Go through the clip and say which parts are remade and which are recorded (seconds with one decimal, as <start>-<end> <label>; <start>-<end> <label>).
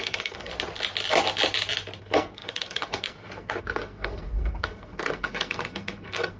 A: 0.0-0.5 remade; 0.5-2.0 recorded; 2.0-6.4 remade